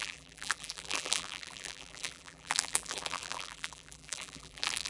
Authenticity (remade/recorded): remade